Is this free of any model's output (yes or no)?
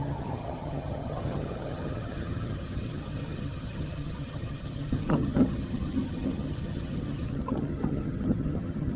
no